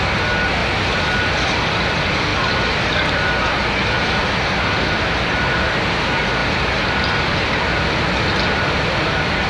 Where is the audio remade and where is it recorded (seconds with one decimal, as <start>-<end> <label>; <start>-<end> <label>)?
0.0-0.6 recorded; 0.6-1.8 remade; 1.8-9.5 recorded